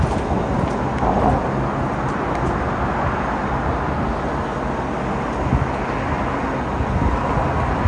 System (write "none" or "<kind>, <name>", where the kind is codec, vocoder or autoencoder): none